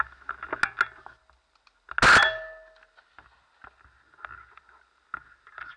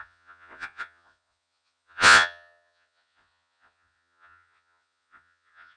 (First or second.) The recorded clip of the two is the first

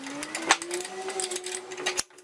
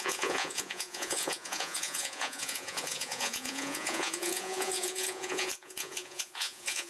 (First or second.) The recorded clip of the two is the first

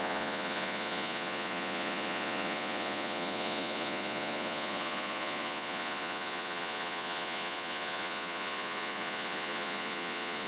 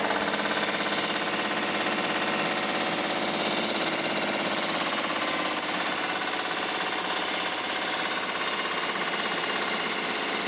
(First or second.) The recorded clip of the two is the second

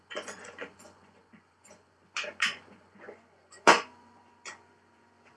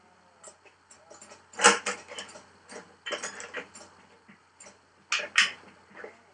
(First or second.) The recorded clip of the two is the second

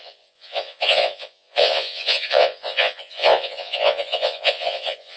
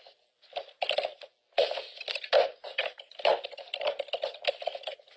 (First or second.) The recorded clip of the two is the second